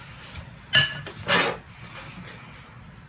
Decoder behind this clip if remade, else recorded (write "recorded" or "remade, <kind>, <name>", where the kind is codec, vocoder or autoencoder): recorded